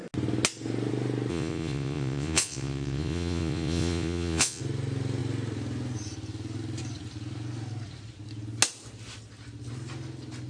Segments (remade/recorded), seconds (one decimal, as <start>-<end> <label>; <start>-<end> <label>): 0.0-1.3 recorded; 1.3-4.6 remade; 4.6-10.5 recorded